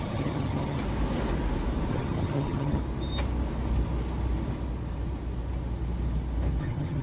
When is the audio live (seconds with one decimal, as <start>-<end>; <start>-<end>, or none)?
0.8-1.9; 2.8-6.6